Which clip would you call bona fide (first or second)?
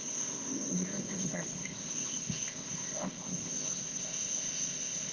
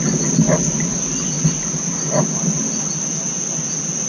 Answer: second